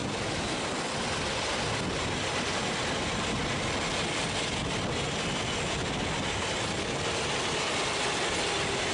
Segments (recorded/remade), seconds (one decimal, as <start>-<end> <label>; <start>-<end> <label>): 0.0-8.9 recorded